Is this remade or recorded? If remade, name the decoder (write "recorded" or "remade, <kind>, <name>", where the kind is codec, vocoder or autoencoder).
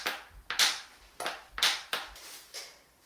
recorded